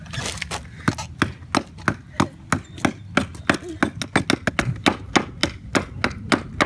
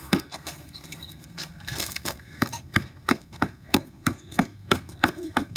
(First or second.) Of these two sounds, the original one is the first